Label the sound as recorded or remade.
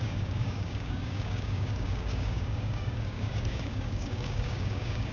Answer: remade